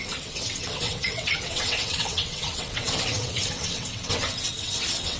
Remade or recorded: remade